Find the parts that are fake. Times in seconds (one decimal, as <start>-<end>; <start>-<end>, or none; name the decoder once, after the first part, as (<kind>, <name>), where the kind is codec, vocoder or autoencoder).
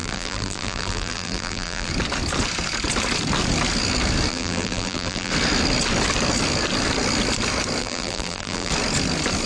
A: 0.0-1.9 (vocoder, BigVGAN v2); 4.3-5.3; 7.8-8.7